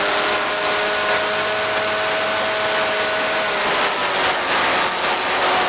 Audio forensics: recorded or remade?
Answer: recorded